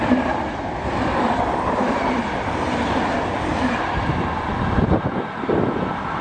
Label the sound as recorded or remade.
remade